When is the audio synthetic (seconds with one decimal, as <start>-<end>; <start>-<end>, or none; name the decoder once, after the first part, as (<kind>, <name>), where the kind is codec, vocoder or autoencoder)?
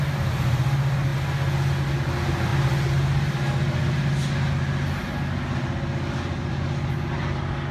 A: none